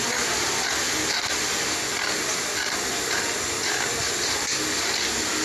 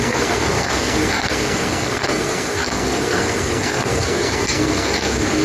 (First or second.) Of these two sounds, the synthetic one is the second